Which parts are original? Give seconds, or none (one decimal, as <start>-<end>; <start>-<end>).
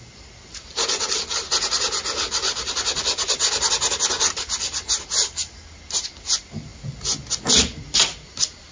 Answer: 0.0-8.7